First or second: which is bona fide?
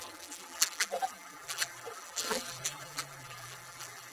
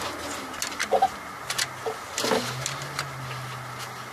second